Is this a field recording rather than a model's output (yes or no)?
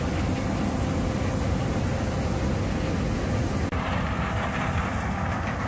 yes